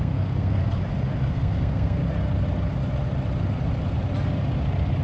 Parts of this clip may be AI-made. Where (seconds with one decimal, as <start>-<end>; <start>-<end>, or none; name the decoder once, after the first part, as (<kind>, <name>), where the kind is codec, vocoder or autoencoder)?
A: 0.0-0.6 (codec, SNAC); 1.3-2.0